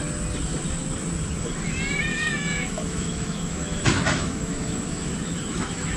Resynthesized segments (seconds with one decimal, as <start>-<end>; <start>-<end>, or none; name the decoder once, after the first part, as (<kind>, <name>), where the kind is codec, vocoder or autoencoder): 2.1-6.0 (autoencoder, DAC-VAE)